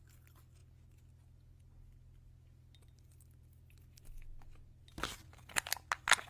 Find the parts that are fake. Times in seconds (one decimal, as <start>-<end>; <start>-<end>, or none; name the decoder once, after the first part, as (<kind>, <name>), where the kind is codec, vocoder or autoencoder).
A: none